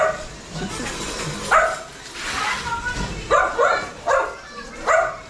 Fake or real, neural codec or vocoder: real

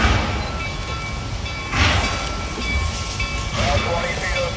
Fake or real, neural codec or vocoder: real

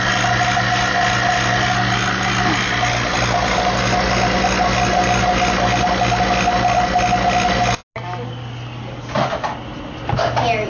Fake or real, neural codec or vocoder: real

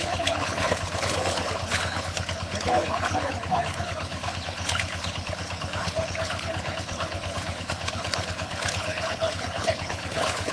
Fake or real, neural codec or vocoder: fake, codec, HILCodec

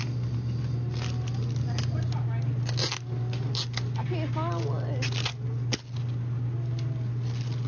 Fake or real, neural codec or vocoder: real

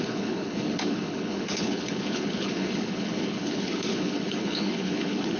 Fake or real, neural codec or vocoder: fake, codec, HILCodec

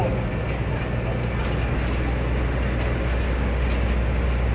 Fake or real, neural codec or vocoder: real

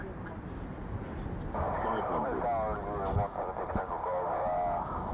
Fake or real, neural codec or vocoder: real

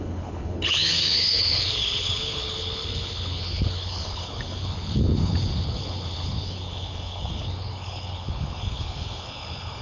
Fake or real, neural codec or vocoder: fake, codec, HILCodec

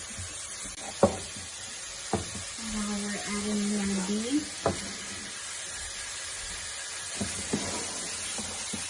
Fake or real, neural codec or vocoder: real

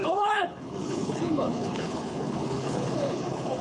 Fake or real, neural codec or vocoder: fake, codec, HILCodec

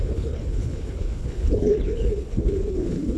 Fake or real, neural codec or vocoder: fake, codec, HILCodec